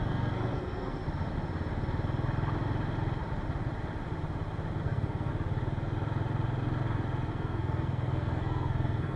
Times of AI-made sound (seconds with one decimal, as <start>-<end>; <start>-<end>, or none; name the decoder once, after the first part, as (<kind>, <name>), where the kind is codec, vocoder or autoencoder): 0.0-1.0 (codec, SNAC); 4.8-5.3; 7.3-9.2